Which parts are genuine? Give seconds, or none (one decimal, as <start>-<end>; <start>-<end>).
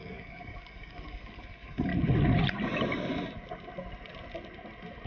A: 1.9-5.1